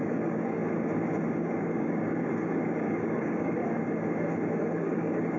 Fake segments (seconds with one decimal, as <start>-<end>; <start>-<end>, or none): 0.0-0.6; 1.4-3.6; 4.6-5.4